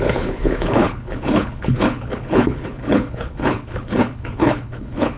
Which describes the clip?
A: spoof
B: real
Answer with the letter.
A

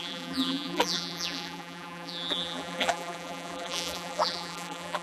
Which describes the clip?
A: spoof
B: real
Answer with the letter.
A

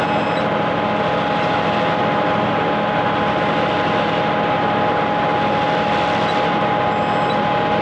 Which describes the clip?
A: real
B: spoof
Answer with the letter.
A